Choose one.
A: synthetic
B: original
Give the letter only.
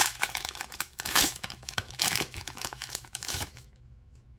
A